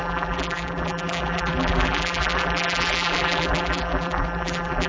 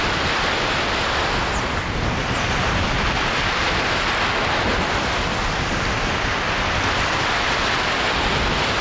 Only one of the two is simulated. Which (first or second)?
first